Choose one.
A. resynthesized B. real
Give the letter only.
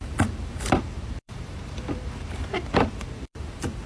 A